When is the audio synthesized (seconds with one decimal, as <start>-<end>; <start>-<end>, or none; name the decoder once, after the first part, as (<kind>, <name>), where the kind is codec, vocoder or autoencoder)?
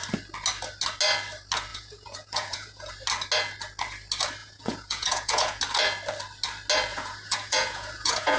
1.7-2.9 (vocoder, Vocos); 4.4-5.6; 6.9-8.4